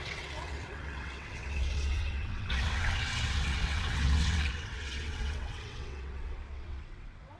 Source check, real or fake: fake